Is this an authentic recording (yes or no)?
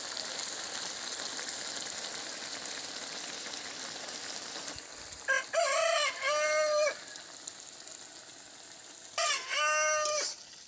yes